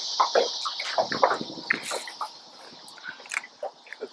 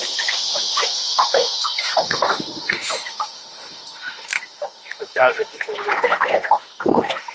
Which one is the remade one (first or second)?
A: second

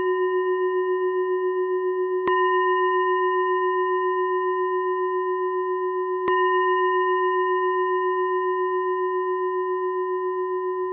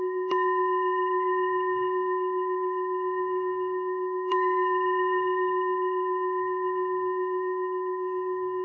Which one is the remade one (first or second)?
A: second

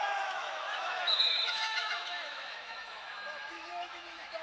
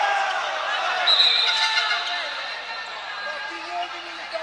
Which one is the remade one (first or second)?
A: first